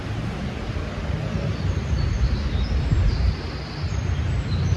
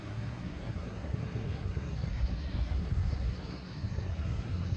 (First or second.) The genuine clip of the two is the first